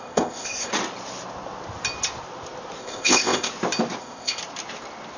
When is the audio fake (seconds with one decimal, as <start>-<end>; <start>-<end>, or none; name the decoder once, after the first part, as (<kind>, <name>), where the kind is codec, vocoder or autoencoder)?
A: 0.0-0.7 (codec, ZipCodec); 2.8-3.5; 4.0-4.4